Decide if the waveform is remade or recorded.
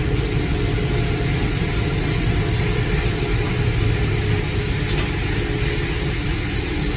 recorded